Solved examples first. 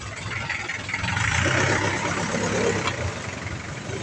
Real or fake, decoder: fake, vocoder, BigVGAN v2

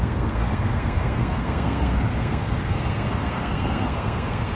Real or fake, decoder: fake, codec, SNAC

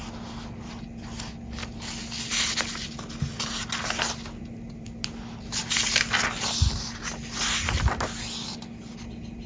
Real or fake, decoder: real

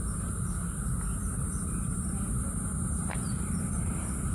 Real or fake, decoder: real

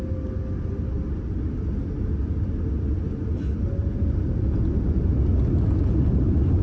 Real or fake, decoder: real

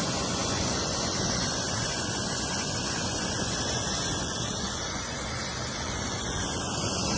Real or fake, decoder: fake, vocoder, Vocos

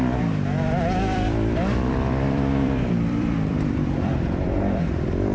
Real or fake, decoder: fake, vocoder, BigVGAN v2